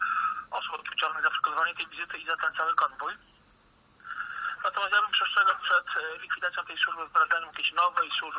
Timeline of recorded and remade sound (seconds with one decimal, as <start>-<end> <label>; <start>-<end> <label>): 0.0-8.4 recorded